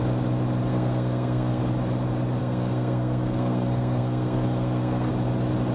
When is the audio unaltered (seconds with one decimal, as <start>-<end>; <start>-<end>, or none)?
0.0-0.7; 1.6-2.4; 5.1-5.7